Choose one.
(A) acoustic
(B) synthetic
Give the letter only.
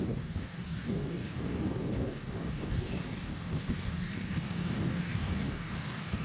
B